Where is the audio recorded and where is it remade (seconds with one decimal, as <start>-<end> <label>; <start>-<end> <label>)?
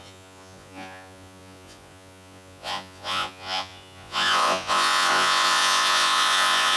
0.0-6.8 remade